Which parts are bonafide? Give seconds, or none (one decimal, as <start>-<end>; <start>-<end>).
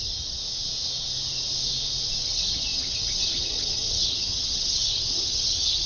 0.4-2.2